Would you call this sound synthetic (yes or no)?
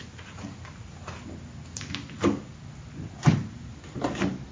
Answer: no